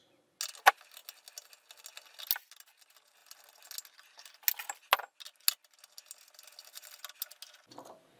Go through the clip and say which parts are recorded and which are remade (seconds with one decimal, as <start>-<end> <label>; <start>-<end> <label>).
0.0-8.2 recorded